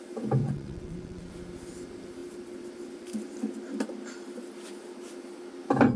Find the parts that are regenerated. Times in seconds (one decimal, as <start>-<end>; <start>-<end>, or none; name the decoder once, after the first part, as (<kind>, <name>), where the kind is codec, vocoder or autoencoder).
0.4-1.3 (vocoder, WaveNeXt)

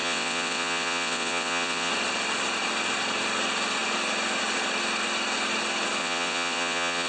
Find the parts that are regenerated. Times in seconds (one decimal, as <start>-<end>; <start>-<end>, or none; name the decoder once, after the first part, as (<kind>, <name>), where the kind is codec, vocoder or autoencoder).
0.0-1.9 (vocoder, WaveNeXt); 6.0-7.1

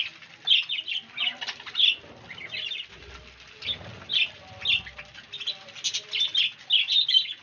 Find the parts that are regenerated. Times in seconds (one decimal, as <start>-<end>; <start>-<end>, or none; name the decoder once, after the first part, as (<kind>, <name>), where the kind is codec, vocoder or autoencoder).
none

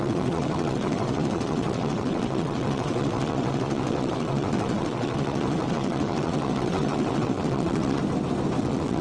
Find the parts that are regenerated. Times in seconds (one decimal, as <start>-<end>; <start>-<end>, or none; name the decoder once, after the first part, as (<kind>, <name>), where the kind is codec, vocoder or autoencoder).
0.0-8.0 (vocoder, WaveNeXt); 8.6-9.0

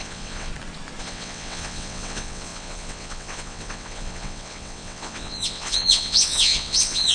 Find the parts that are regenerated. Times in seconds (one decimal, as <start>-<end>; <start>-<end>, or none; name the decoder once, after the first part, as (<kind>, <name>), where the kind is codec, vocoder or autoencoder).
0.0-0.5 (vocoder, WaveNeXt); 1.0-7.1

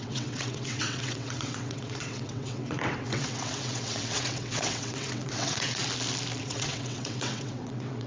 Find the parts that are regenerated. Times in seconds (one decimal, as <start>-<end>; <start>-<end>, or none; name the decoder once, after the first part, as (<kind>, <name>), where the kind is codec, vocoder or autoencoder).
0.0-5.8 (vocoder, WaveNeXt); 6.4-8.1

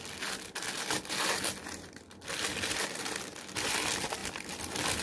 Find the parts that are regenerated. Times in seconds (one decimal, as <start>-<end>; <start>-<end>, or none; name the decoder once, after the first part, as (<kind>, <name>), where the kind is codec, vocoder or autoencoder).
none

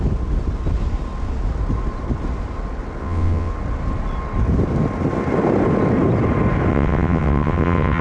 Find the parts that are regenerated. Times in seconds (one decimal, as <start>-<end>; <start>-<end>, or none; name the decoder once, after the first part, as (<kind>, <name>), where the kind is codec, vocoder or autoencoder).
3.0-3.5 (vocoder, WaveNeXt); 6.7-8.0